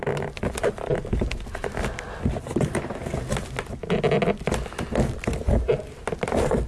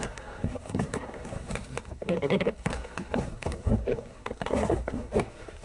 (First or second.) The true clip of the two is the first